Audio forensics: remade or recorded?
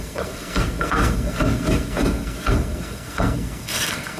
remade